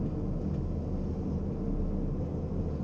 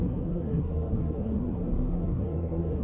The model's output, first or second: second